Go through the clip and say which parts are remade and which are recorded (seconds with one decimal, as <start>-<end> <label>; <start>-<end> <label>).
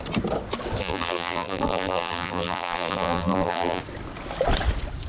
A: 0.0-0.8 recorded; 0.8-3.8 remade; 3.8-5.1 recorded